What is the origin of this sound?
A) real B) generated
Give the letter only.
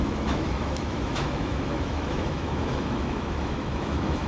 B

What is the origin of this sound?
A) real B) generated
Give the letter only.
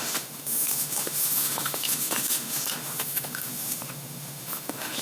B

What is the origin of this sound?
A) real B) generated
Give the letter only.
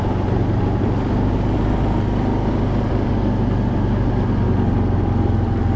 A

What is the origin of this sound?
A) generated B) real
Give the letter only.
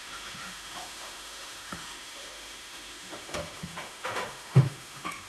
A